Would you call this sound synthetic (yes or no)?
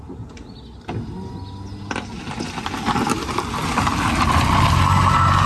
no